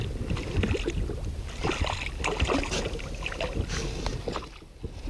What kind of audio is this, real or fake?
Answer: real